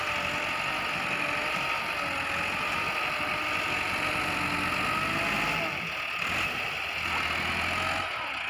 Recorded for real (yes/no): yes